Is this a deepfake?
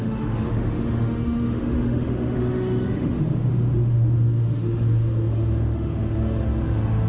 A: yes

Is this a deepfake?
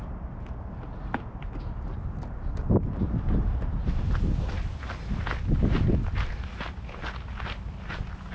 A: no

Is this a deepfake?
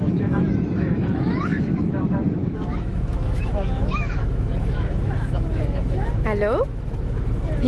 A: yes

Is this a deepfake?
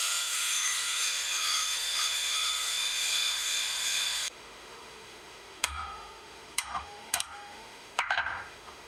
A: yes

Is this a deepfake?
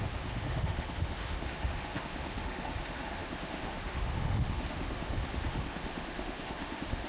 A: yes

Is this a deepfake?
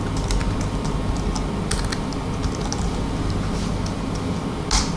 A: no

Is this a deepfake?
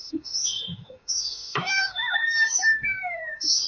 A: yes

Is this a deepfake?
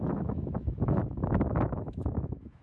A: yes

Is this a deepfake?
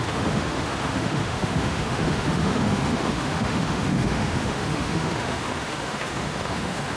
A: yes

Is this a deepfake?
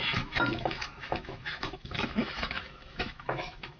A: yes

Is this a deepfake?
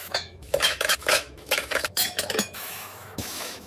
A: yes